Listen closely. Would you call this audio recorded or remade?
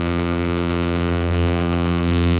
remade